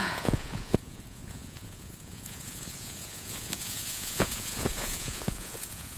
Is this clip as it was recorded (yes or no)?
no